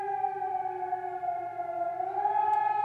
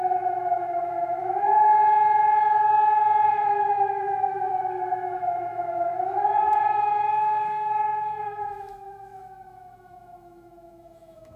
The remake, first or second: second